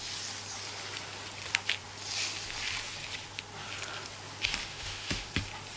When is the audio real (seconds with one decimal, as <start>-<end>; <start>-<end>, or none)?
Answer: 0.0-4.7; 5.3-5.8

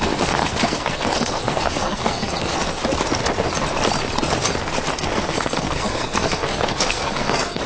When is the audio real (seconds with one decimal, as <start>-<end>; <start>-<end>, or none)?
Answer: 2.8-4.9